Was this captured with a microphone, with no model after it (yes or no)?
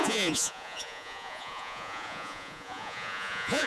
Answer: no